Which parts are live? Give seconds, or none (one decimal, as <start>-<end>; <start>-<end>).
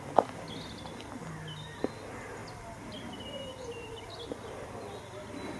0.0-5.6